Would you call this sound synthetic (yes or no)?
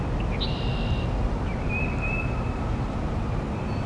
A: no